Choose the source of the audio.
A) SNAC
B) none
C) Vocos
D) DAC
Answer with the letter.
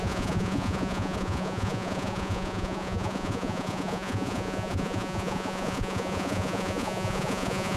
C